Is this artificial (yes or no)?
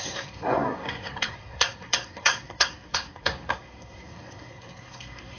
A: yes